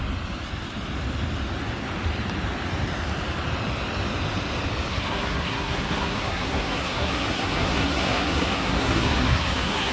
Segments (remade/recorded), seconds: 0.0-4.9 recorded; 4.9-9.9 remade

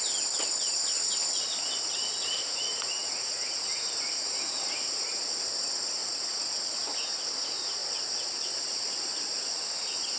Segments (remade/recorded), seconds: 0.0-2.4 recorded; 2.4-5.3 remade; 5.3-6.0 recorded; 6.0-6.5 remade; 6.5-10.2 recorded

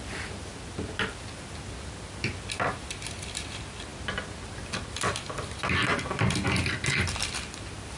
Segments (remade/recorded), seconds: 0.0-8.0 recorded

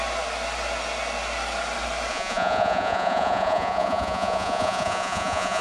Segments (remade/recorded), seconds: 0.0-2.1 recorded; 2.1-5.6 remade

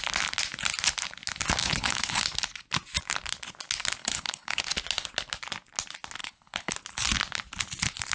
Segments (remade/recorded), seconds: 0.0-1.6 recorded; 1.6-2.2 remade; 2.2-4.0 recorded; 4.0-4.6 remade; 4.6-6.2 recorded; 6.2-6.7 remade; 6.7-8.1 recorded

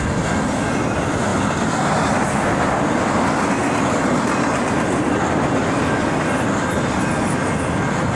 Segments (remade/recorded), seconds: 0.0-1.3 recorded; 1.3-3.0 remade; 3.0-8.2 recorded

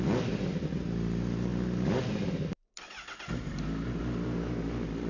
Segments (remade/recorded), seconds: 0.0-5.1 recorded

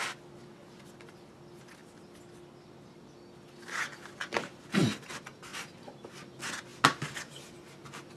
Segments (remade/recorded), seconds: 0.0-8.2 recorded